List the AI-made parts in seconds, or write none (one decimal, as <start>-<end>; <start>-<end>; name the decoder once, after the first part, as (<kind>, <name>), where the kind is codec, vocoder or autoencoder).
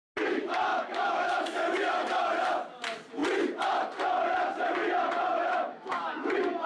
0.7-1.8 (autoencoder, DAC-VAE); 5.3-6.0